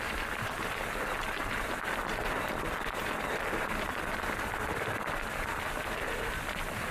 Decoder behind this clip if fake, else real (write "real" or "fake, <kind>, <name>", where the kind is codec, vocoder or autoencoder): real